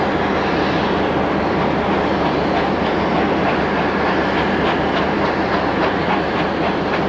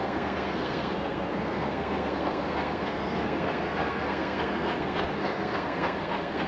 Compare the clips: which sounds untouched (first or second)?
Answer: first